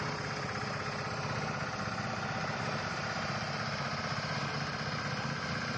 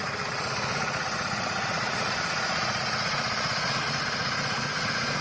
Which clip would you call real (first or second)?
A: first